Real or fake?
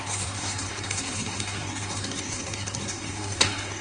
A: fake